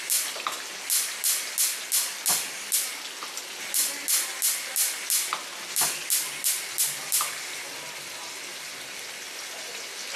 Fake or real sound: real